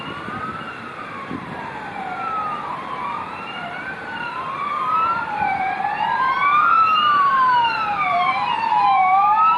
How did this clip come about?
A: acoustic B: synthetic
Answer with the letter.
B